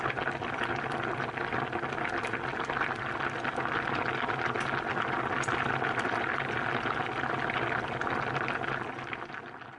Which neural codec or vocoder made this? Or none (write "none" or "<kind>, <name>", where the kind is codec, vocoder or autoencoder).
none